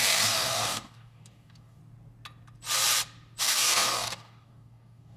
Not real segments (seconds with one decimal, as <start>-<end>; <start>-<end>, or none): 0.0-1.8; 3.4-5.2